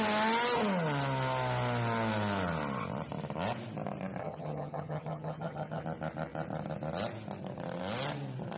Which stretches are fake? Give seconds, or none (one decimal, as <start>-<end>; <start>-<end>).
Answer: 4.2-5.8